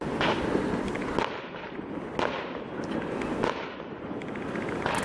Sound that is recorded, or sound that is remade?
recorded